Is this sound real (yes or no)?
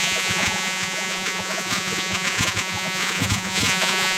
no